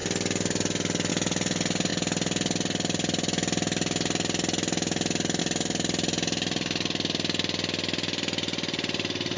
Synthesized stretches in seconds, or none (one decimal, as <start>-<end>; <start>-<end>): none